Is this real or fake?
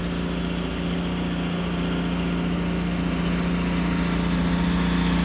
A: real